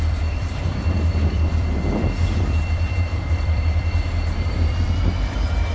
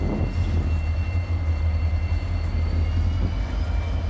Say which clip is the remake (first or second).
first